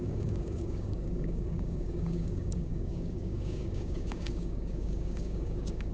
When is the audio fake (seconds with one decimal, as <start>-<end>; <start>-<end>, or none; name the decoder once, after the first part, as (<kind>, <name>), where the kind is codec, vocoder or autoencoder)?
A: 0.0-5.9 (codec, DAC)